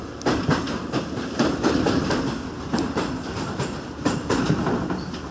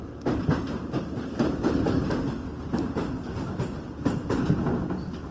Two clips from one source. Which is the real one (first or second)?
second